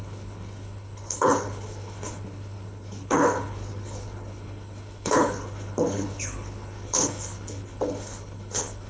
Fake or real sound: fake